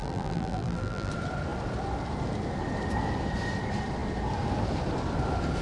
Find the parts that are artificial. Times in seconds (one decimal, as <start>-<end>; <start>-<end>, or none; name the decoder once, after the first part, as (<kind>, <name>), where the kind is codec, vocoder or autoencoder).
0.0-1.1 (vocoder, BigVGAN v2)